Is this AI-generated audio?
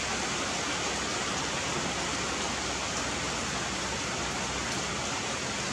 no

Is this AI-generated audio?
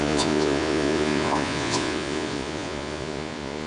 yes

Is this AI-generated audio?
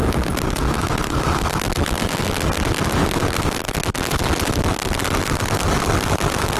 no